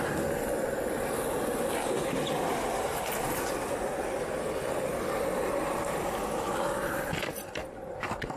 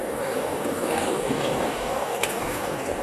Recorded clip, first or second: first